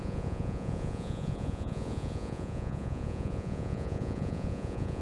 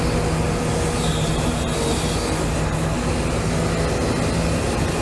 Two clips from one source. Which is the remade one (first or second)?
first